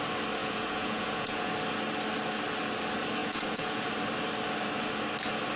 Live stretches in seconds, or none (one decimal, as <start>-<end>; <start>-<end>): 0.0-0.4; 1.5-3.2; 3.9-5.6